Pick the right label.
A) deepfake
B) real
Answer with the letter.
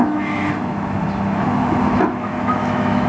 A